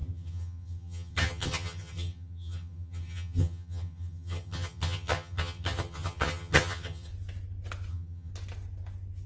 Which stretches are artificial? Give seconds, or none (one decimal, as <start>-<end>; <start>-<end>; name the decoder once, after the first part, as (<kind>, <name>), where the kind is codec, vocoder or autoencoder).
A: 0.0-7.1 (vocoder, HiFi-GAN); 7.9-8.3